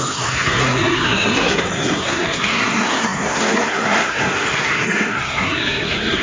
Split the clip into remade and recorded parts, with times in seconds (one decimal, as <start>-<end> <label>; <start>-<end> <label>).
0.0-6.2 remade